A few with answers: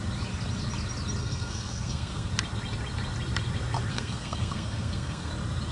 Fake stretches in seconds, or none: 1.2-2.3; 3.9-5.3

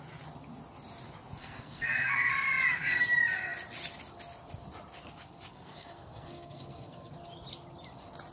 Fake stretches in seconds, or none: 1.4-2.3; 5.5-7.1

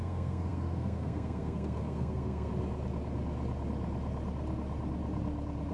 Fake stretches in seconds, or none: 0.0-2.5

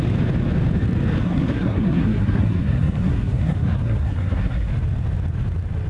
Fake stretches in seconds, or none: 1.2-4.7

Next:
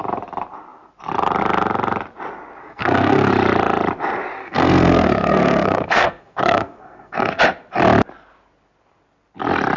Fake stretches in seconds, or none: 2.6-3.3; 4.4-7.4

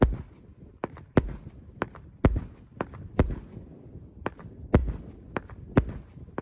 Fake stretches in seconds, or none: none

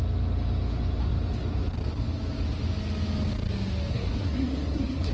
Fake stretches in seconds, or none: 3.9-5.1